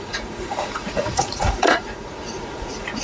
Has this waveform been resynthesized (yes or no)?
yes